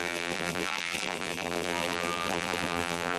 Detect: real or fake fake